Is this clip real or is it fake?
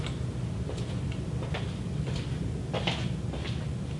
real